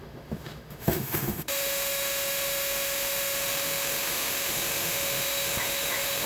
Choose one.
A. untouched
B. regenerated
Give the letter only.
B